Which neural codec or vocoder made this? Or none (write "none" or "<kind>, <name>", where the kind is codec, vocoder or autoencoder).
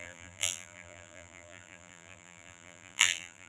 vocoder, BigVGAN v2